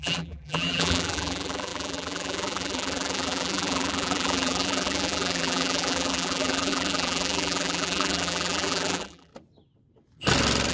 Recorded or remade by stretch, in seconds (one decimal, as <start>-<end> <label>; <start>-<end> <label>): 0.0-9.3 remade; 9.3-10.7 recorded